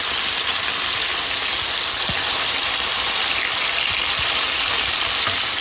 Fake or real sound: real